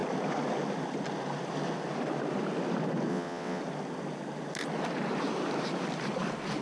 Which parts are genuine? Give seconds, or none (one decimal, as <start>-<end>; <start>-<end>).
0.0-3.1; 3.6-6.6